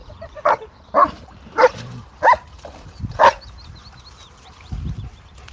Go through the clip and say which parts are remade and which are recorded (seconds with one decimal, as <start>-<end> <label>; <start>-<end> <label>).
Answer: 0.0-0.5 remade; 0.5-5.5 recorded